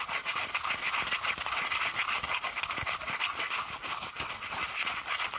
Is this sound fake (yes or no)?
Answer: no